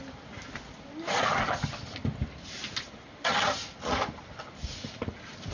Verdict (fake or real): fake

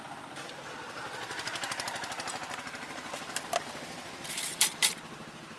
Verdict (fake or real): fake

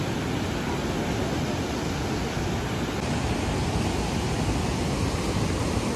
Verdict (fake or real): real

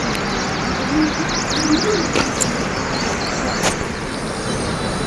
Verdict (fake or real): real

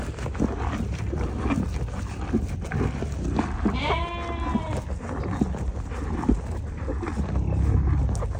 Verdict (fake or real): real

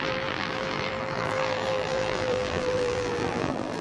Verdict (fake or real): fake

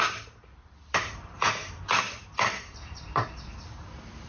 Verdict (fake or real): fake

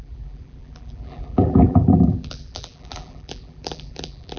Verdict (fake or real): fake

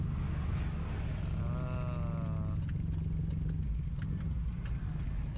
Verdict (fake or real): real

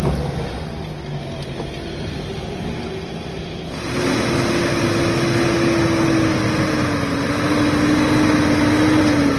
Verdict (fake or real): real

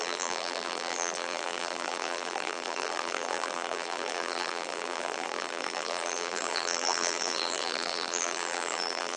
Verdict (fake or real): fake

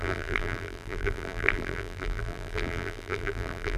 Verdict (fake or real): fake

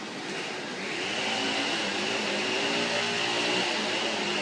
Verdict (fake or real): fake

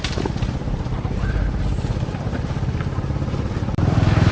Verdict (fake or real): fake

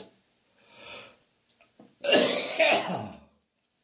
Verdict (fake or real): real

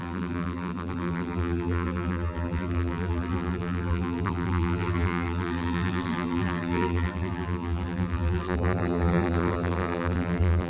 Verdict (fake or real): fake